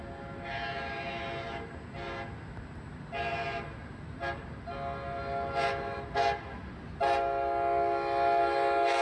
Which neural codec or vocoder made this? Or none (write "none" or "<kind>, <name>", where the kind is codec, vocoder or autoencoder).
none